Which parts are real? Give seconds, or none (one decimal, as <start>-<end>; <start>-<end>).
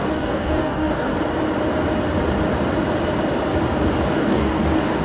1.1-4.1